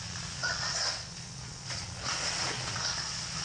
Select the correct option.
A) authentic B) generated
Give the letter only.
B